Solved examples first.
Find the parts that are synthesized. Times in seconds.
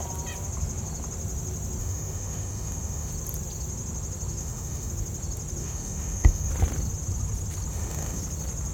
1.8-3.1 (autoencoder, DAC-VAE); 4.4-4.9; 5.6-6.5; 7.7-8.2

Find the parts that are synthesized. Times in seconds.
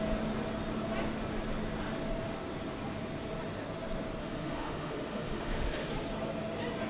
4.2-5.9 (autoencoder, DAC-VAE)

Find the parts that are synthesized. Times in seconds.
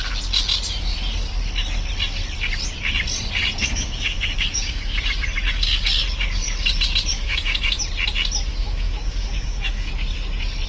3.6-5.0 (autoencoder, DAC-VAE); 7.1-7.8; 8.5-9.9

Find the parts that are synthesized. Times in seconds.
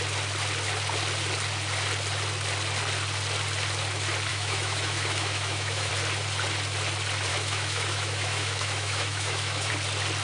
4.3-5.9 (autoencoder, DAC-VAE); 7.3-9.7